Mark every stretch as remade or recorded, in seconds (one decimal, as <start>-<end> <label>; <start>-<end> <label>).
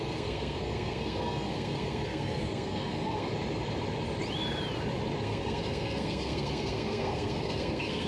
0.0-3.3 remade; 3.3-5.2 recorded; 5.2-8.1 remade